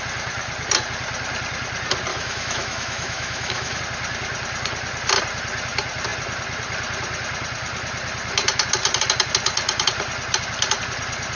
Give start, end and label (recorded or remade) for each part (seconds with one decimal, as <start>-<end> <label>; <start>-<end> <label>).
0.0-2.1 recorded; 2.1-3.8 remade; 3.8-11.4 recorded